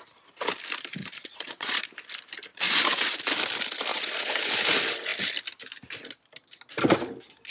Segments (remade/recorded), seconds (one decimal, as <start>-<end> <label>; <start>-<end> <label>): 0.0-1.0 recorded; 1.0-1.8 remade; 1.8-2.5 recorded; 2.5-3.2 remade; 3.2-3.9 recorded; 3.9-4.4 remade; 4.4-7.5 recorded